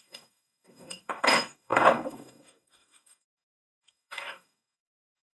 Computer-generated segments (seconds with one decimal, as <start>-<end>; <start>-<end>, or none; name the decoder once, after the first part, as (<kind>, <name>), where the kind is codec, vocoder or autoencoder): 0.0-5.4 (codec, DAC)